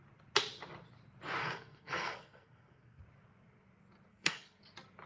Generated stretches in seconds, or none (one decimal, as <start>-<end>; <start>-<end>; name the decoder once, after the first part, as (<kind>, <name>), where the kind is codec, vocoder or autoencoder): 1.4-3.0 (codec, SNAC); 4.1-4.6